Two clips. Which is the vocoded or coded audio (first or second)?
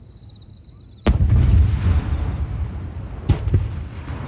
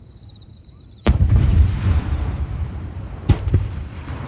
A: second